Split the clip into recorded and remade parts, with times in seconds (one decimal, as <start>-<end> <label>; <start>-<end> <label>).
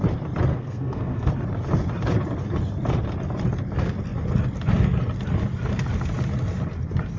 0.0-0.5 recorded; 0.5-1.3 remade; 1.3-7.2 recorded